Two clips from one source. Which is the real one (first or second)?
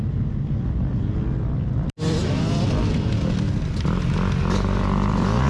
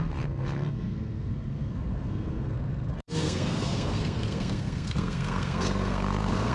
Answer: first